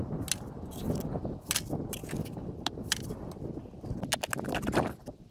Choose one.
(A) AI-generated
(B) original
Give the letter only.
B